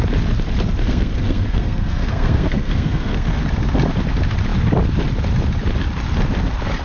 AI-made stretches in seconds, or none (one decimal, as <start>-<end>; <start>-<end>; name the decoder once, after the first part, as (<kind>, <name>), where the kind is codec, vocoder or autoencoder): 0.8-3.4 (codec, SNAC)

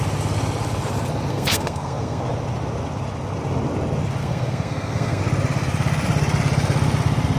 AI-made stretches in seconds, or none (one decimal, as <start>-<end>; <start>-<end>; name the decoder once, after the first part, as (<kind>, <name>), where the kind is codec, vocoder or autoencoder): 1.3-2.2 (codec, SNAC); 4.2-5.2